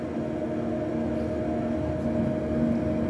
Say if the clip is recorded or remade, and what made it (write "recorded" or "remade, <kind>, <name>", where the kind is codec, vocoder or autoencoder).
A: recorded